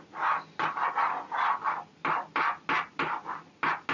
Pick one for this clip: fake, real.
real